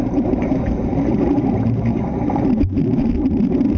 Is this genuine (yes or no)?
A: no